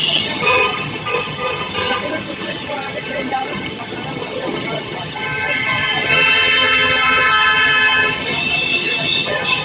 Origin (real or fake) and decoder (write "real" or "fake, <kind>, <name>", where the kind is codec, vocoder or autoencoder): fake, vocoder, HiFi-GAN